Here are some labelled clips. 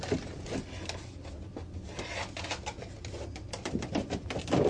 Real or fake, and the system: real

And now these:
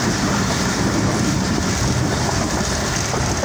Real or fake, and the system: real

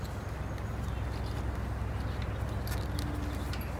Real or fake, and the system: real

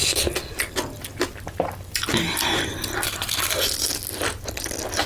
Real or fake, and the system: real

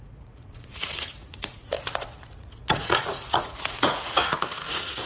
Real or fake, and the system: fake, vocoder, Vocos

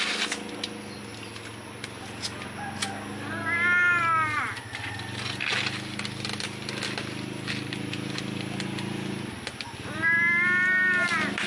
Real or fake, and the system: real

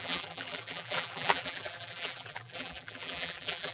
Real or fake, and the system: fake, vocoder, BigVGAN v2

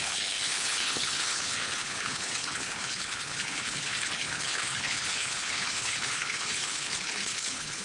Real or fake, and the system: fake, codec, HILCodec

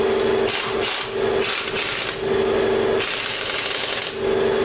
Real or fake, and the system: real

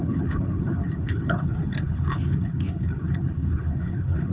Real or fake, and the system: fake, codec, HILCodec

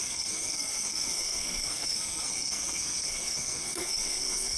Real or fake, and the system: fake, codec, SNAC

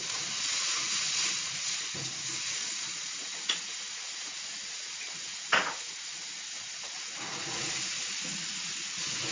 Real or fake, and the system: fake, vocoder, Vocos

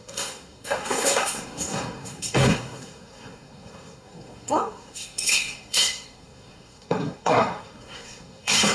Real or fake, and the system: fake, codec, SNAC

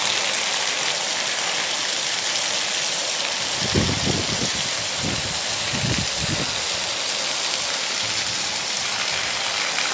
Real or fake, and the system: real